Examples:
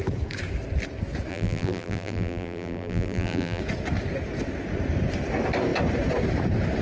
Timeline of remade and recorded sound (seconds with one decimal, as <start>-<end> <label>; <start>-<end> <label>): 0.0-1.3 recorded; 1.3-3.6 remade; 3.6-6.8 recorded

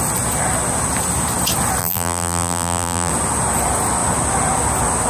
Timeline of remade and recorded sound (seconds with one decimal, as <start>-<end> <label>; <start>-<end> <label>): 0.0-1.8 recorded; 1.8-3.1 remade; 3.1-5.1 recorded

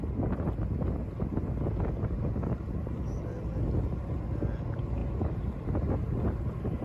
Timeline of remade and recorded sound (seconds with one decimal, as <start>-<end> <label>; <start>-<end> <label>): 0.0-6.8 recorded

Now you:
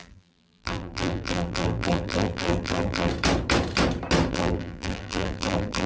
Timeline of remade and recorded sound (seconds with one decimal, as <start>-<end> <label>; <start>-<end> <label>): 0.0-3.1 remade; 3.1-4.3 recorded; 4.3-5.9 remade